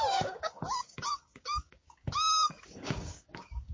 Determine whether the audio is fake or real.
fake